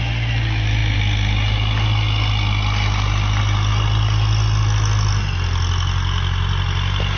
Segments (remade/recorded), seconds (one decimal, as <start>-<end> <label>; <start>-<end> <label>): 0.0-7.2 recorded